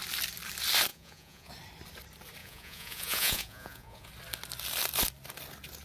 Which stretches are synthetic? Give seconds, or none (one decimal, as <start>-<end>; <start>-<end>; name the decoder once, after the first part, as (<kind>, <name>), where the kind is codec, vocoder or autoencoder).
0.9-1.5 (vocoder, Vocos); 2.4-4.1